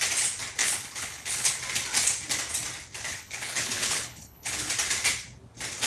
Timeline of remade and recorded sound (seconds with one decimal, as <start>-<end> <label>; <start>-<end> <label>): 0.0-0.6 recorded; 0.6-1.5 remade; 1.5-3.1 recorded; 3.1-4.7 remade; 4.7-5.9 recorded